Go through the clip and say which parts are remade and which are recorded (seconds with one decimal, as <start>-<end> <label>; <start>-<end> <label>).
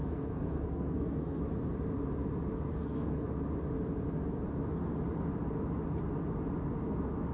0.0-1.4 remade; 1.4-2.7 recorded; 2.7-3.2 remade; 3.2-7.3 recorded